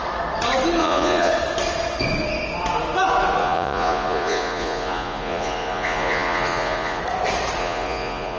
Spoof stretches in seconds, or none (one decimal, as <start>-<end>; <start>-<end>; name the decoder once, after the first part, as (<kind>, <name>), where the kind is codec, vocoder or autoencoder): 0.8-1.3 (vocoder, Vocos); 3.4-7.0; 7.6-8.4